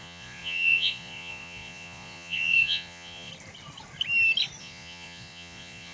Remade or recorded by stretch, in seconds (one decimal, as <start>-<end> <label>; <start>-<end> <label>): 0.0-3.3 remade; 3.3-4.6 recorded; 4.6-5.9 remade